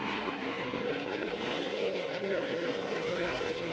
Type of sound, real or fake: fake